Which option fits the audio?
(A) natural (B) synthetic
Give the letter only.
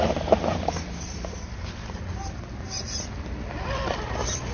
B